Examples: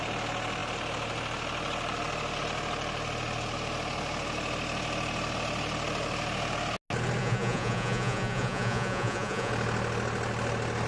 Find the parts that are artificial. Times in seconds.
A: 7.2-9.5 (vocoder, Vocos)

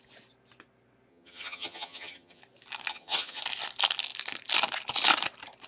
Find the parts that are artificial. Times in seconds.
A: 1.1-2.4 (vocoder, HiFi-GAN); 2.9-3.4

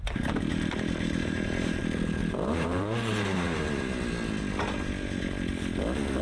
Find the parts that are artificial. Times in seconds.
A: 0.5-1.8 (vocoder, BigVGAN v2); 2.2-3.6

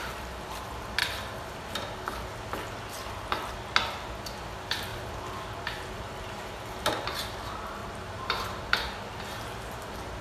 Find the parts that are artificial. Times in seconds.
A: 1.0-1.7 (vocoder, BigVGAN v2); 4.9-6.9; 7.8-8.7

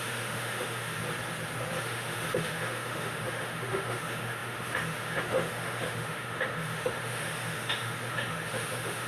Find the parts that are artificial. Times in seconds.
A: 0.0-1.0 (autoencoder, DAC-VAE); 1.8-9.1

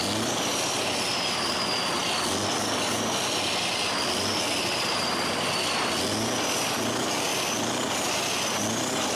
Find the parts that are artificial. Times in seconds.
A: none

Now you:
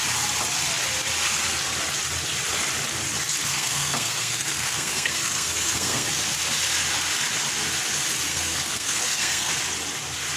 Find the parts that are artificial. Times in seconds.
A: 3.5-6.1 (codec, SNAC); 8.3-9.5

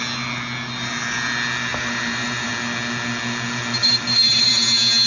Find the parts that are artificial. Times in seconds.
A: 1.7-2.5 (vocoder, BigVGAN v2); 3.8-4.5